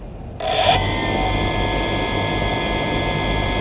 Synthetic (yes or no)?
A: no